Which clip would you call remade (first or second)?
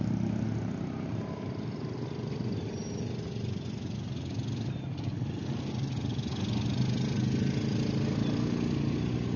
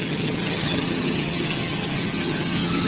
second